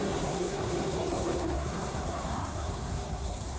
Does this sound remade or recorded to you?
remade